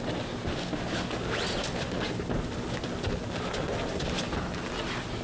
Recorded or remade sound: recorded